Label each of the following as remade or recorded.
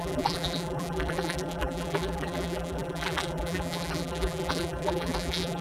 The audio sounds remade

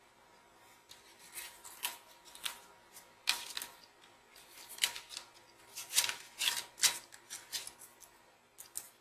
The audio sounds recorded